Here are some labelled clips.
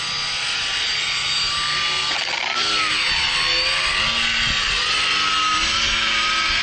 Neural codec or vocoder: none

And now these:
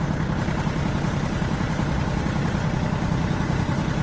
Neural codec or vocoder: none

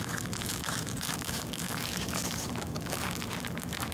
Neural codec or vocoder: codec, DAC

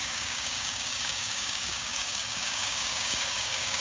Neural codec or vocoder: codec, DAC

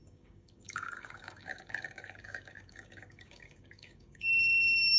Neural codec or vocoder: codec, DAC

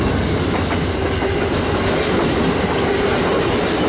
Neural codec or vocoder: none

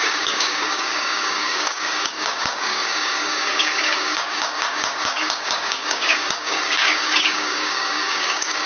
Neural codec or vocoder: codec, DAC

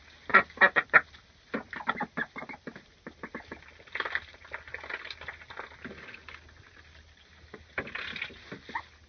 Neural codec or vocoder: none